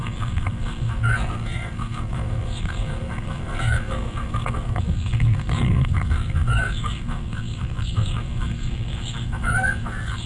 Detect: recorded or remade remade